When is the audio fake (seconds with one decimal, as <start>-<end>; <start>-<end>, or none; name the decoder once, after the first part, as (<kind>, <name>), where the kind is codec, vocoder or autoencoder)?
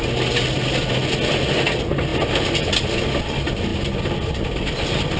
none